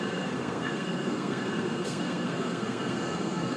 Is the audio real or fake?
fake